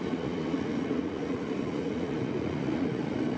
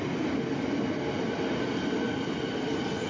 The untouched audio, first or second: second